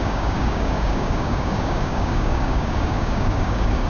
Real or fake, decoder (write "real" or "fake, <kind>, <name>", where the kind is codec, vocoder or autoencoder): fake, codec, DAC